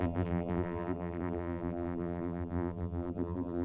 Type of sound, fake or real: fake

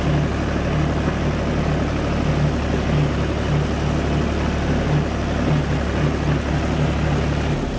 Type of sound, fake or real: real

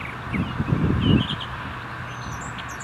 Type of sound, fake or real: real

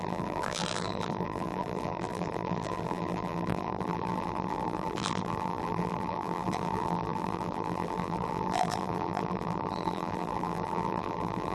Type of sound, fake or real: fake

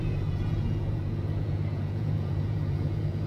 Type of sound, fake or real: fake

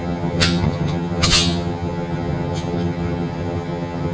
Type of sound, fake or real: fake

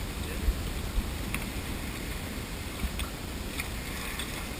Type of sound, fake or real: real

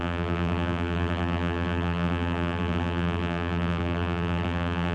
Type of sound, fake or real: fake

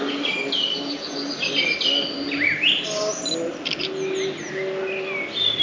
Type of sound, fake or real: real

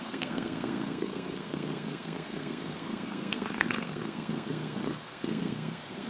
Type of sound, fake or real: fake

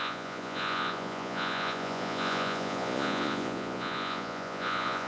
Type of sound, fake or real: fake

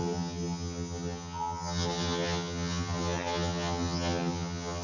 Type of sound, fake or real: fake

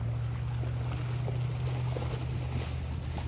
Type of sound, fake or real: real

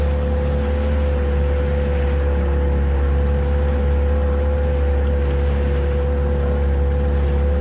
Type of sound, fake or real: real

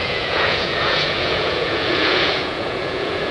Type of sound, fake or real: fake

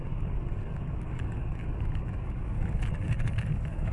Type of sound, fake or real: fake